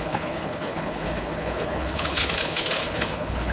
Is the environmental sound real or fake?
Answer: fake